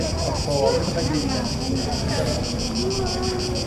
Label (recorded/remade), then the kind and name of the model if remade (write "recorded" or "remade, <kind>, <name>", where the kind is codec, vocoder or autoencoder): recorded